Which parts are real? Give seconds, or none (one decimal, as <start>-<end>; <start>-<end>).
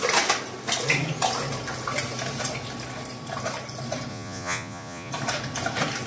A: 0.0-4.1; 5.1-6.1